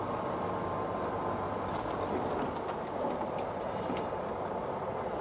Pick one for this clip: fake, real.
real